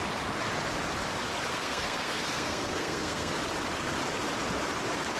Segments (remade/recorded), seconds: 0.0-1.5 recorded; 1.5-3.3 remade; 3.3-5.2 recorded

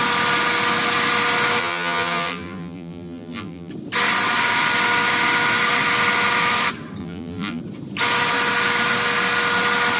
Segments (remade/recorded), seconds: 0.0-1.6 recorded; 1.6-3.7 remade; 3.7-7.0 recorded; 7.0-7.6 remade; 7.6-10.0 recorded

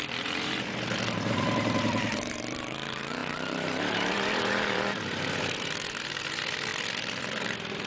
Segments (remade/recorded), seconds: 0.0-6.7 remade; 6.7-7.2 recorded; 7.2-7.9 remade

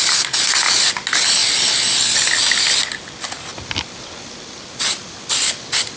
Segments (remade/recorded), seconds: 0.0-6.0 recorded

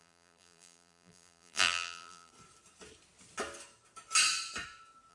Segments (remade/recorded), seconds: 0.0-2.3 remade; 2.3-5.1 recorded

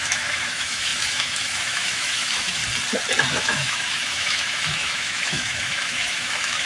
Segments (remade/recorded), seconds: 0.0-2.6 remade; 2.6-3.3 recorded; 3.3-6.7 remade

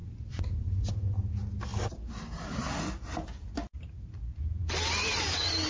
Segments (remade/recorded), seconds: 0.0-0.9 remade; 0.9-5.7 recorded

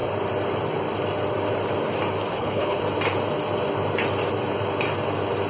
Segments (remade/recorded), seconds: 0.0-2.3 recorded; 2.3-2.8 remade; 2.8-5.5 recorded